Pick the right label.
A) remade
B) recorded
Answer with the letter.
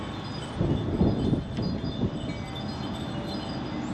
B